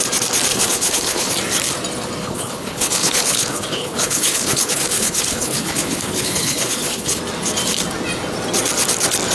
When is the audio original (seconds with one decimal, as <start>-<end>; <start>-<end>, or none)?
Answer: 0.0-0.5; 1.3-2.2; 7.2-9.3